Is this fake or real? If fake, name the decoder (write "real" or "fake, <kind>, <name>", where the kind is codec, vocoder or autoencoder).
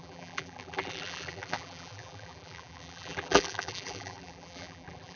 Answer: fake, vocoder, BigVGAN v2